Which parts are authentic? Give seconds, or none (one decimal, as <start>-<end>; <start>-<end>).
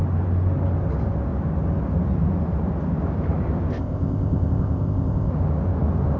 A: 0.0-3.7; 5.3-6.2